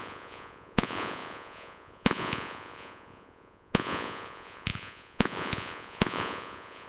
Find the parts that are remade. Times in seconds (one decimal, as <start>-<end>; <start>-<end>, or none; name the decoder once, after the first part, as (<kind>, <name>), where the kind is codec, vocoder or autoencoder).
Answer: 0.0-6.9 (vocoder, Vocos)